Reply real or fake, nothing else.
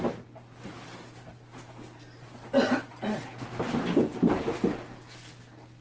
real